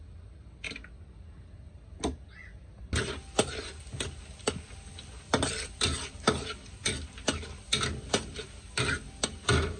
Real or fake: real